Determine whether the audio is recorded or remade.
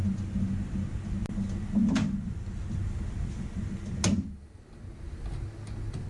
recorded